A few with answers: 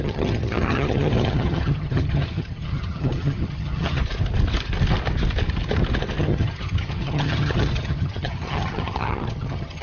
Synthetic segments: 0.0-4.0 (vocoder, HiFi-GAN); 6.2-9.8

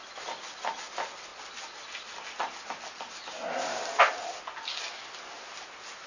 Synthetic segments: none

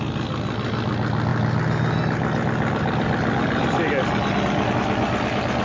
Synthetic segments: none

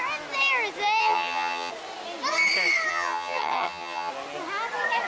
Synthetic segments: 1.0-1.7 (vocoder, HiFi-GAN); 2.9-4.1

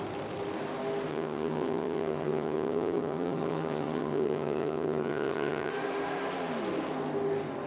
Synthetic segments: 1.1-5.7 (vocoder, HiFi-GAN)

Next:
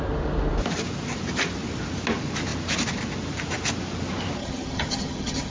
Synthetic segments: 4.4-5.5 (vocoder, HiFi-GAN)

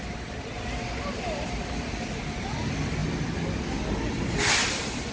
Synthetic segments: none